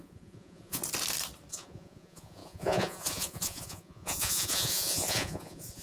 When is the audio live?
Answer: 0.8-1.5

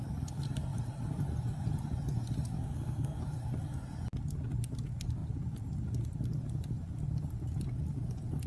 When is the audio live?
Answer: 0.0-2.6; 3.2-8.5

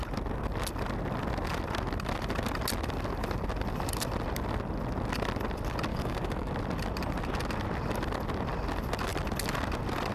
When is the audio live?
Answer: 0.0-5.9; 6.5-10.1

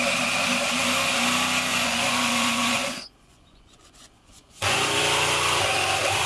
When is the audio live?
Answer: 0.0-1.7; 5.0-6.3